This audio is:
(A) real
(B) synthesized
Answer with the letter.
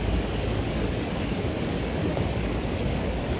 B